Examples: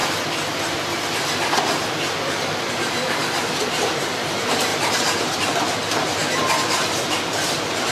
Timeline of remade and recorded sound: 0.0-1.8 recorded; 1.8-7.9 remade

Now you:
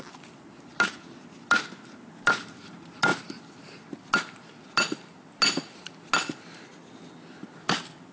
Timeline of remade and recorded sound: 0.0-8.1 recorded

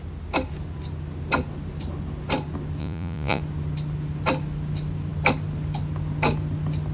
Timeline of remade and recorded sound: 0.0-2.8 recorded; 2.8-3.4 remade; 3.4-6.9 recorded

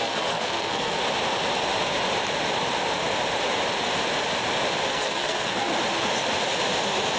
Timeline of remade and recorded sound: 0.0-1.0 remade; 1.0-4.9 recorded; 4.9-5.7 remade; 5.7-7.2 recorded

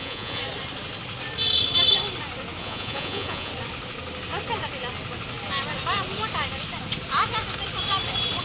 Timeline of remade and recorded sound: 0.0-0.4 remade; 0.4-2.6 recorded; 2.6-3.5 remade; 3.5-8.4 recorded

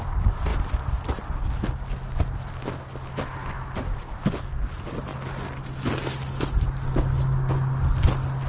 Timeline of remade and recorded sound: 0.0-8.5 recorded